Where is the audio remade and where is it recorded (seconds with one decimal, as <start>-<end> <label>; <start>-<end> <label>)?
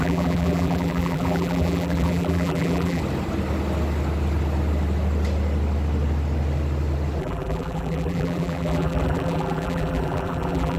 0.0-3.0 remade; 3.0-7.2 recorded; 7.2-10.8 remade